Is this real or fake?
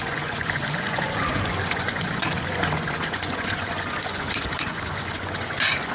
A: fake